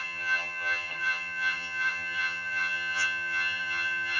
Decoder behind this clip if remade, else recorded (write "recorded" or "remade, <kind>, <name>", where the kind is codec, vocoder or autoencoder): remade, vocoder, HiFi-GAN